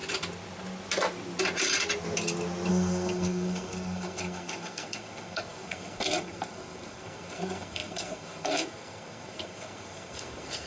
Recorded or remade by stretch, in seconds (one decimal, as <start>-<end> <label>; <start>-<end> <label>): 0.0-2.7 recorded; 2.7-10.7 remade